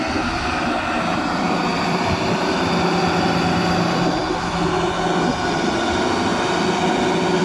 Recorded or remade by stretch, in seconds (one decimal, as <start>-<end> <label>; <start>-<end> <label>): 0.0-1.7 recorded; 1.7-2.5 remade; 2.5-7.4 recorded

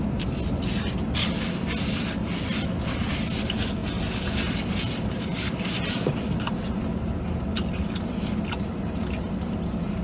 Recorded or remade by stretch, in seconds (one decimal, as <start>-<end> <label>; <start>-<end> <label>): 0.0-10.0 recorded

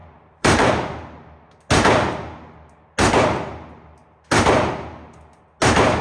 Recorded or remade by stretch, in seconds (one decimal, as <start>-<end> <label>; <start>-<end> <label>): 0.0-0.7 remade; 0.7-6.0 recorded

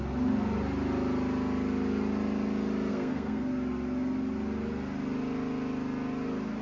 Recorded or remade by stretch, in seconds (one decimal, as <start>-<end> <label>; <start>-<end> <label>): 0.0-2.9 recorded; 2.9-3.4 remade; 3.4-6.6 recorded

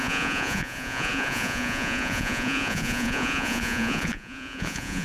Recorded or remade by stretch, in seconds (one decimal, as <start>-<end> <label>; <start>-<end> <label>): 0.0-5.0 remade